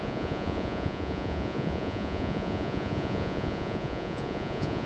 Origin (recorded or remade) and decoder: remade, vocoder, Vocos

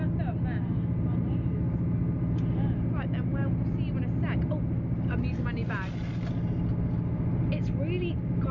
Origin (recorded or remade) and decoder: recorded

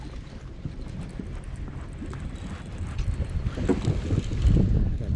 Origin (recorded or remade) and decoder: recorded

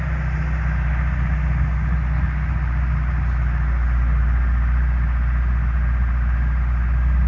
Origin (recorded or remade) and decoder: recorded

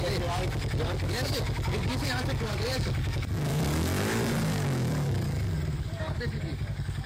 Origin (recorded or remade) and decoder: remade, codec, DAC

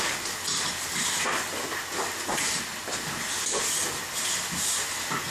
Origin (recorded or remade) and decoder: recorded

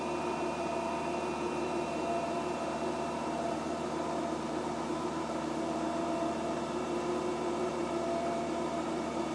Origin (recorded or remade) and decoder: remade, vocoder, BigVGAN v2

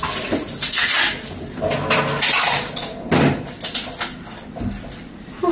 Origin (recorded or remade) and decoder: recorded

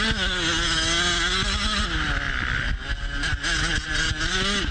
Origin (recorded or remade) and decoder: recorded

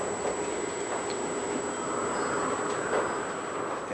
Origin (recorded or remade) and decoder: recorded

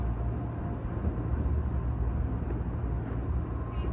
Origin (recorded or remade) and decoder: recorded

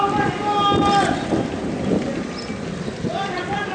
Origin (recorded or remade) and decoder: recorded